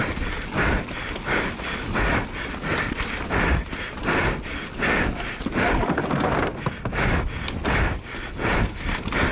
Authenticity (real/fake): real